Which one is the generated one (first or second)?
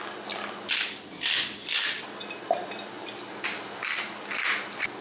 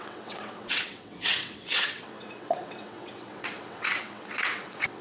second